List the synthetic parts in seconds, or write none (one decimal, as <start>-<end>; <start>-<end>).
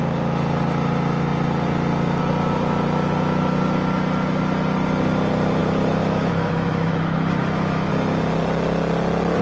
5.6-7.9